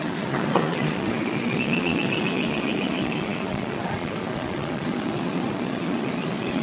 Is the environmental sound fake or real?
fake